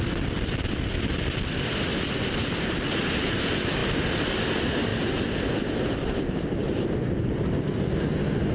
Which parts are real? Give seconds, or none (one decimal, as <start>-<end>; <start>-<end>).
0.0-8.5